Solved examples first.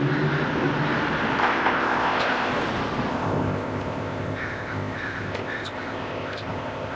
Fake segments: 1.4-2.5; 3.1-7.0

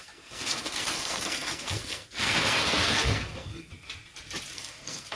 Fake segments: 0.0-3.7; 4.5-5.2

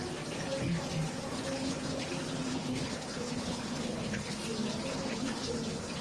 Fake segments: 1.3-2.1; 2.5-4.4; 4.9-5.5

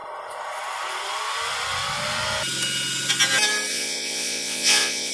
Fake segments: 3.7-5.1

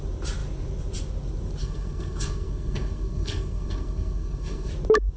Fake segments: 1.6-4.7

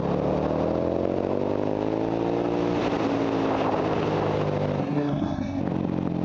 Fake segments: 4.8-5.6